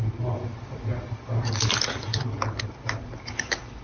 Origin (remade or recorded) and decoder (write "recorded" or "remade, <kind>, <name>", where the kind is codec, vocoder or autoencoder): recorded